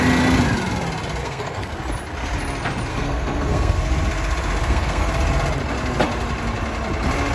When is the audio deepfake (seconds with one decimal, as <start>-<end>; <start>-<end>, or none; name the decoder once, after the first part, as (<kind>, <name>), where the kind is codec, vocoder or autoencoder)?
1.2-1.8 (codec, SNAC); 2.9-3.8; 4.6-5.1